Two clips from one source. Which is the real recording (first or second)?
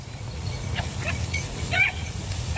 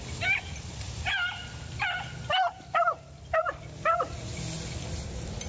second